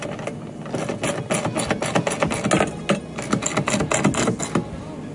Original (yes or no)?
yes